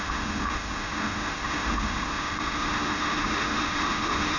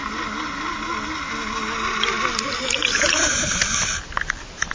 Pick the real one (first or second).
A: second